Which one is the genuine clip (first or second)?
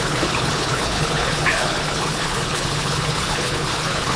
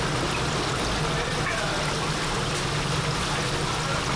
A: second